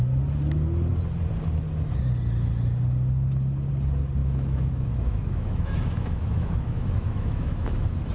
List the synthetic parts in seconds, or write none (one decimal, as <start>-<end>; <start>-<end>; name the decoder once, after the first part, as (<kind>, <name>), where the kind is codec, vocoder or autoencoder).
4.2-8.1 (autoencoder, DAC-VAE)